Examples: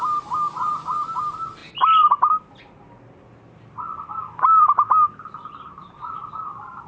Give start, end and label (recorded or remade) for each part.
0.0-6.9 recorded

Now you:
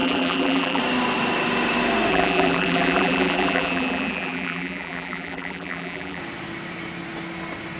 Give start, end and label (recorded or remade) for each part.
0.0-0.8 remade; 0.8-2.1 recorded; 2.1-6.2 remade; 6.2-7.8 recorded